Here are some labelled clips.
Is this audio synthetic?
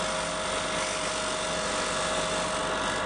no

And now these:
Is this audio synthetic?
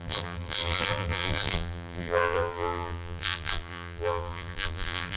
yes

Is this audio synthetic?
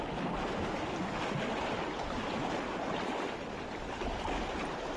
no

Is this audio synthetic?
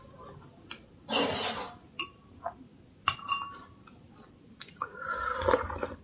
no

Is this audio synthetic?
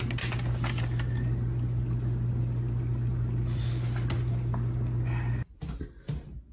no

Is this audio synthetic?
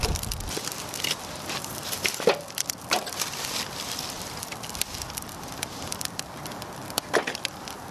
no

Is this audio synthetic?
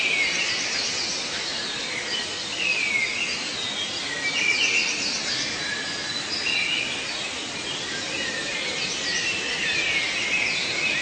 no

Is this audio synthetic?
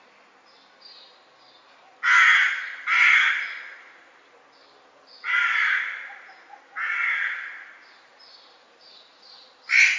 no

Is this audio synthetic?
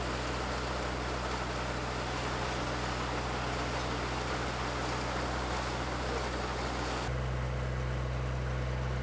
no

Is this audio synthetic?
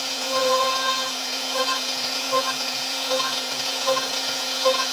yes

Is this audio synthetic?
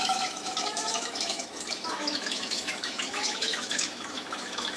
yes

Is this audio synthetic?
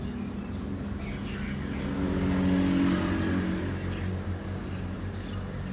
no